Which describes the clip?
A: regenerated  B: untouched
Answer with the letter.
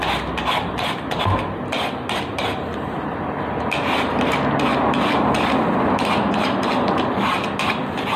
B